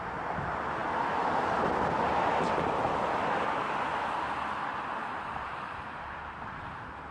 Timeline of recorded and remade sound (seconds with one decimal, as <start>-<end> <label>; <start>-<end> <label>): 0.0-4.7 recorded; 4.7-6.6 remade; 6.6-7.1 recorded